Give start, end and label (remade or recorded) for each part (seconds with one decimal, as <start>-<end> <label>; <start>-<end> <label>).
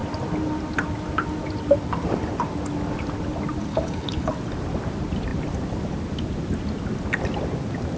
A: 0.0-3.7 recorded; 3.7-4.3 remade; 4.3-8.0 recorded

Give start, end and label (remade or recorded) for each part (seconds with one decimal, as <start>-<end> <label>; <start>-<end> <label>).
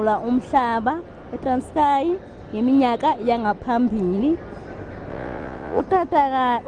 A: 0.0-5.1 recorded; 5.1-5.8 remade; 5.8-6.7 recorded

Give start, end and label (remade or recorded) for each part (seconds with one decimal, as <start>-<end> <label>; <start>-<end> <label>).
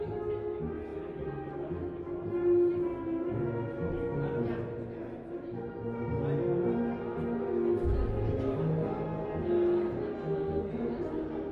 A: 0.0-10.1 recorded; 10.1-10.7 remade; 10.7-11.5 recorded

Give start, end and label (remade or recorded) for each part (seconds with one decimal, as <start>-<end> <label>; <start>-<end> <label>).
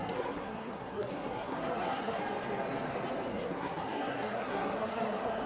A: 0.0-2.2 remade; 2.2-3.3 recorded; 3.3-5.5 remade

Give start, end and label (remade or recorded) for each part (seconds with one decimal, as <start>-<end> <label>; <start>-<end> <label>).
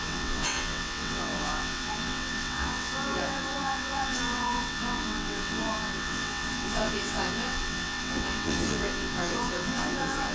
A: 0.0-10.3 remade